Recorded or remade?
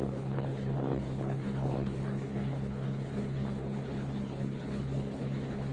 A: remade